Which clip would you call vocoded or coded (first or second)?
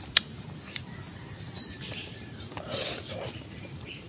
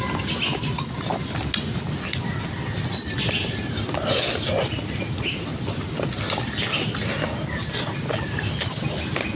first